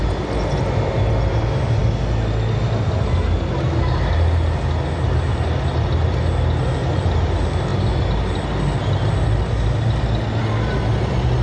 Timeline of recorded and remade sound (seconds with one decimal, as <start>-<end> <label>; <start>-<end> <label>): 0.0-11.4 recorded